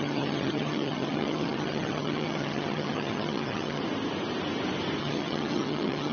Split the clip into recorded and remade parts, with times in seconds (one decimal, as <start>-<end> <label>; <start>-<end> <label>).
0.0-3.8 remade; 3.8-5.0 recorded; 5.0-6.1 remade